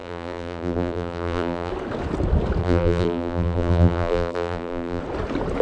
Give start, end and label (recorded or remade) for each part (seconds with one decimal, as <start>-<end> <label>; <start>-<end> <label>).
0.0-1.7 remade; 1.7-2.6 recorded; 2.6-5.0 remade; 5.0-5.6 recorded